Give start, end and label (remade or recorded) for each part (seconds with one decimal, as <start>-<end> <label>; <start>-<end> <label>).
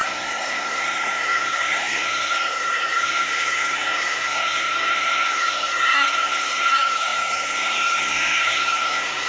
0.0-9.3 remade